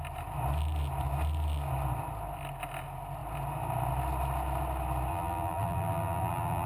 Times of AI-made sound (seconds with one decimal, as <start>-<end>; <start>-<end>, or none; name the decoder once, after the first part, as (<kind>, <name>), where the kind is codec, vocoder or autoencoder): 5.1-6.7 (vocoder, BigVGAN v2)

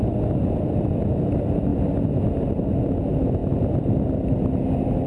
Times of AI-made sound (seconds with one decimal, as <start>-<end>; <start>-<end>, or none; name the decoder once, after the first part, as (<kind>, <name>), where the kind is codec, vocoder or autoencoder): 1.7-2.5 (vocoder, BigVGAN v2)

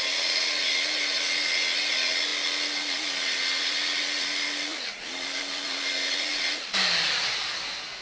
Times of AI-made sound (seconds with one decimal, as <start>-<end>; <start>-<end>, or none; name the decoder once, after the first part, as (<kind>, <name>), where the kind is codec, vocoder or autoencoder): 4.7-5.9 (vocoder, BigVGAN v2)